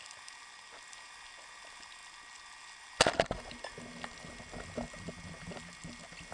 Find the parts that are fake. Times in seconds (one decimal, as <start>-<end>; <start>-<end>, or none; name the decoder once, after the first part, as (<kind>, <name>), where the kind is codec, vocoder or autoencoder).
none